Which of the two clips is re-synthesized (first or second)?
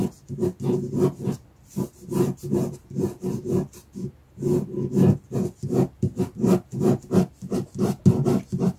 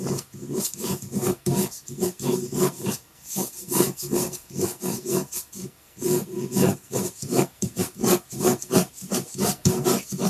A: second